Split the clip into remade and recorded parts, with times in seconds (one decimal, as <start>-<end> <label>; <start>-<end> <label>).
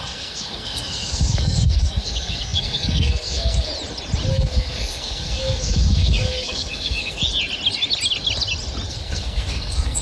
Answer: 0.0-3.7 remade; 3.7-4.3 recorded; 4.3-7.2 remade; 7.2-8.9 recorded; 8.9-10.0 remade